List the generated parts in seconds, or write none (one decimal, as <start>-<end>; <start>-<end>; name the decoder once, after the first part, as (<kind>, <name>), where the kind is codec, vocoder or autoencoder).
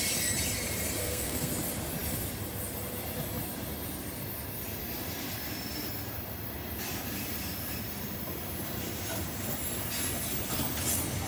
1.0-1.5 (codec, SNAC)